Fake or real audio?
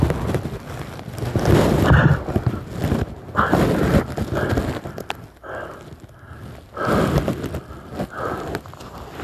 real